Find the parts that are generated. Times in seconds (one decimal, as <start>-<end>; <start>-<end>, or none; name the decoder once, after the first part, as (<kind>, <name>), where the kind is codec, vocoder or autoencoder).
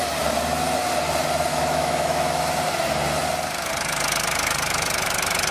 1.5-2.4 (autoencoder, DAC-VAE)